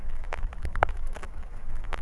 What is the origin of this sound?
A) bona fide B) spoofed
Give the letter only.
B